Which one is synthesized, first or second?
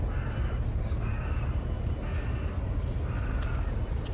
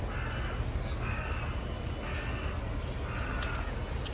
first